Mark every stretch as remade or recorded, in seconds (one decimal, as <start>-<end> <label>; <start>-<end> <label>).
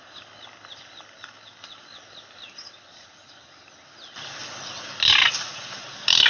0.0-6.3 recorded